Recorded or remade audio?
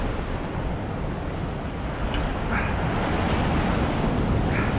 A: recorded